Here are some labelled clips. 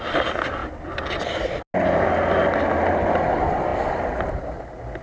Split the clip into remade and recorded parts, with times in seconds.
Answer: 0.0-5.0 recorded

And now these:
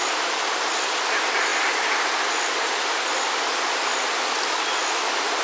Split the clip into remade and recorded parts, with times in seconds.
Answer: 0.0-5.4 recorded

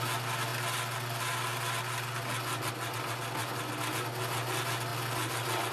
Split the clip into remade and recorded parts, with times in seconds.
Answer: 0.0-5.7 recorded

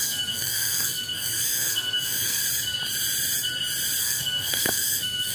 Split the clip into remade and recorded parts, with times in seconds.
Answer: 0.0-2.4 remade; 2.4-4.0 recorded; 4.0-5.3 remade

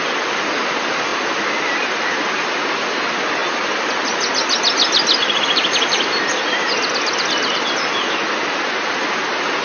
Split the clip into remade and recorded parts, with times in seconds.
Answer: 0.0-9.6 recorded

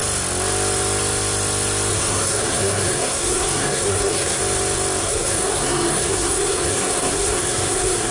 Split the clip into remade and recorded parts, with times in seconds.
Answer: 0.0-1.9 recorded; 1.9-4.4 remade; 4.4-5.0 recorded; 5.0-8.1 remade